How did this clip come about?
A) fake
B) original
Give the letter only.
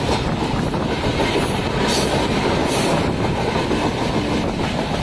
B